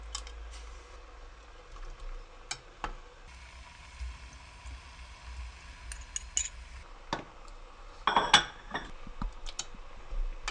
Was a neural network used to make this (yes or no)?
no